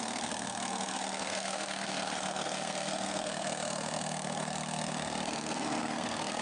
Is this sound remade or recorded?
remade